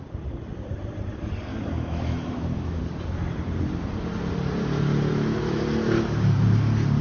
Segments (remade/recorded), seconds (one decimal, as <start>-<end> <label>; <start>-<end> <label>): 0.0-1.5 recorded; 1.5-2.8 remade; 2.8-5.1 recorded; 5.1-5.6 remade; 5.6-7.0 recorded